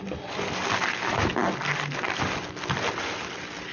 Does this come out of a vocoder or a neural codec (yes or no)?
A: no